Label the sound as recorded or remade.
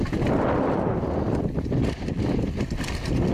recorded